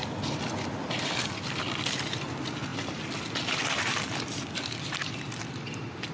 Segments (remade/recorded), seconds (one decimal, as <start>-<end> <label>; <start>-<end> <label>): 0.0-6.1 recorded

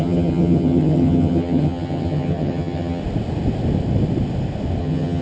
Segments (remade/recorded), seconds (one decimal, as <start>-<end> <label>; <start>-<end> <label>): 0.0-3.0 remade; 3.0-4.8 recorded; 4.8-5.2 remade

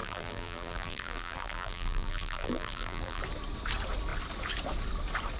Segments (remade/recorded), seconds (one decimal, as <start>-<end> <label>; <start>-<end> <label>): 0.0-3.2 remade; 3.2-5.4 recorded

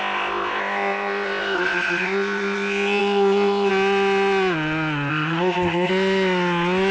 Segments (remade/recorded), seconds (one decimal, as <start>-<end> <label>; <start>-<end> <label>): 0.0-3.7 remade; 3.7-5.1 recorded; 5.1-5.9 remade; 5.9-6.9 recorded

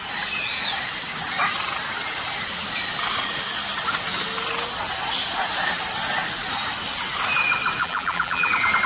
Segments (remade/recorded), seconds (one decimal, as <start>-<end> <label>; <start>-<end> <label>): 0.0-7.8 recorded; 7.8-8.5 remade; 8.5-8.9 recorded

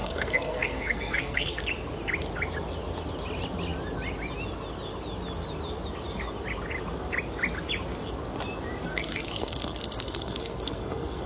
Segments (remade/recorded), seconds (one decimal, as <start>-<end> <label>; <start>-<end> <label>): 0.0-1.6 remade; 1.6-8.9 recorded; 8.9-11.3 remade

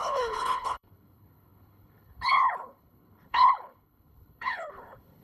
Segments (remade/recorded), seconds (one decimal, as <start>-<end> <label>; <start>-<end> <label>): 0.0-5.2 remade

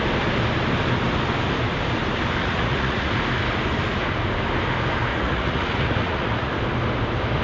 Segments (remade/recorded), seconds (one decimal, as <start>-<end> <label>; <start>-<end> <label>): 0.0-2.4 recorded; 2.4-3.1 remade; 3.1-5.1 recorded; 5.1-6.5 remade; 6.5-7.4 recorded